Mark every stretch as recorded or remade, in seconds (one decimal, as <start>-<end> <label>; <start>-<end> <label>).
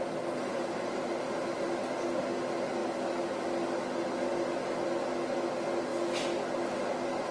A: 0.0-0.5 recorded; 0.5-1.3 remade; 1.3-7.3 recorded